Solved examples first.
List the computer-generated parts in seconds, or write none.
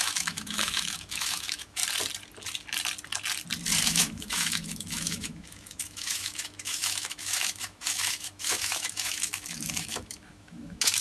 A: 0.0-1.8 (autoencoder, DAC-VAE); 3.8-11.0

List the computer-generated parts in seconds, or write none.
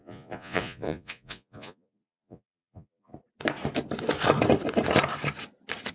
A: 0.0-3.1 (vocoder, Vocos)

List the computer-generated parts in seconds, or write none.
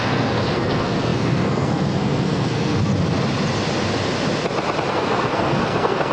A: 0.0-2.9 (codec, SNAC); 4.9-6.1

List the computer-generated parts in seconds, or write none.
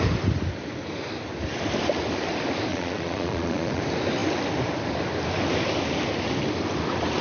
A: 2.7-3.8 (vocoder, Vocos)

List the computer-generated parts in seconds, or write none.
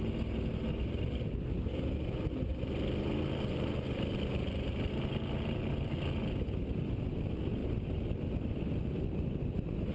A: none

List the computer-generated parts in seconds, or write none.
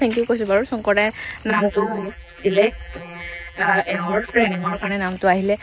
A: 1.5-4.9 (vocoder, BigVGAN v2)